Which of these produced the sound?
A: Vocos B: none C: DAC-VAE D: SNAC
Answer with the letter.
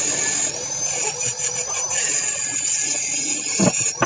B